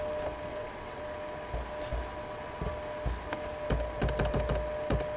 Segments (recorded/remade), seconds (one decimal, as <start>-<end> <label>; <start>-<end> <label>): 0.0-0.5 recorded; 0.5-1.0 remade; 1.0-5.2 recorded

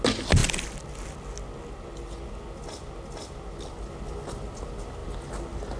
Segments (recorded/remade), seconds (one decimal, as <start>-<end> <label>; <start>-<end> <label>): 0.0-5.8 recorded